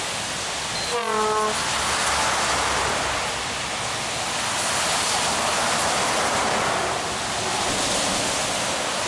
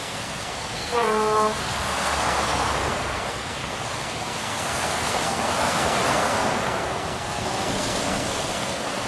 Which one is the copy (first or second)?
second